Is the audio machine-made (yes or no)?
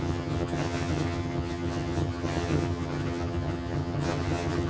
yes